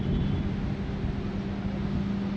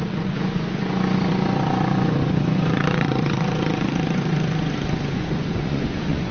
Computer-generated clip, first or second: second